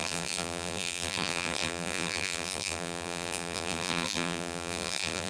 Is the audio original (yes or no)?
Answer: no